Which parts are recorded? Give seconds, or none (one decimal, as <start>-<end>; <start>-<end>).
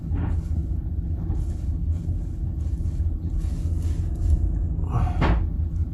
3.5-5.4